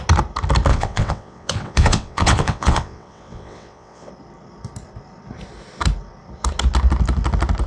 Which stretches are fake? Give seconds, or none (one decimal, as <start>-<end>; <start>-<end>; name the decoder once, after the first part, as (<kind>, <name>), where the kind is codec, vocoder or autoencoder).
0.7-4.1 (vocoder, WaveNeXt)